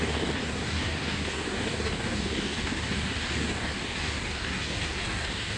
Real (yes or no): no